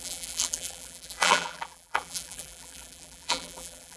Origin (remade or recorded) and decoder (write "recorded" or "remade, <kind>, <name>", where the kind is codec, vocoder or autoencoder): remade, vocoder, BigVGAN v2